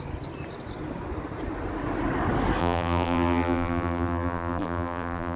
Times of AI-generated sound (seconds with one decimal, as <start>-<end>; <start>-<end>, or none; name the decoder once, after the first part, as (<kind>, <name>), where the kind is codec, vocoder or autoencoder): 2.6-5.4 (vocoder, BigVGAN v2)